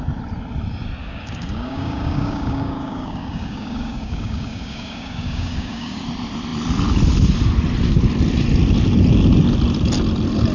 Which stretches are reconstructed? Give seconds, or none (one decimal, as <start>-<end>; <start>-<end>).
1.0-6.0